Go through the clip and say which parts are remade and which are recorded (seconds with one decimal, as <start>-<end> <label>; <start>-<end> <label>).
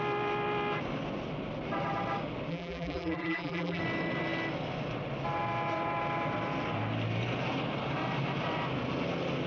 0.0-2.5 recorded; 2.5-3.8 remade; 3.8-9.5 recorded